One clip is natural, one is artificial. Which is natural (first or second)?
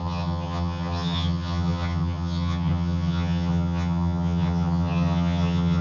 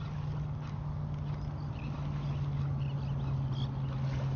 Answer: second